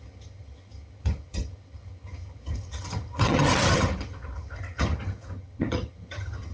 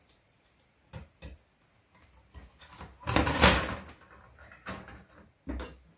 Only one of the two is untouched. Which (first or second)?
second